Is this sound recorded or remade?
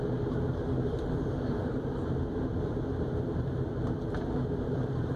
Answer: remade